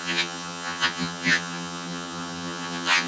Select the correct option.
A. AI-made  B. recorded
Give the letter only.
A